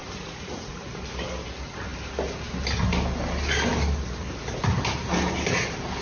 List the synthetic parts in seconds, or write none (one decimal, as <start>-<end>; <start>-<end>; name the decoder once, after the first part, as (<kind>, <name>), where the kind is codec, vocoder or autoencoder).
0.0-0.8 (vocoder, Vocos)